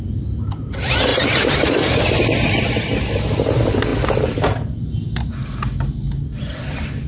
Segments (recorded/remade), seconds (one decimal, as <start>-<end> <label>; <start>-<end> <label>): 0.0-1.1 recorded; 1.1-2.7 remade; 2.7-7.1 recorded